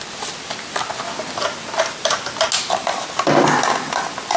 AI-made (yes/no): no